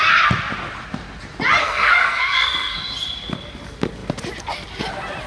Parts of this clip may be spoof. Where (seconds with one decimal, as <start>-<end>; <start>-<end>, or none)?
1.6-2.8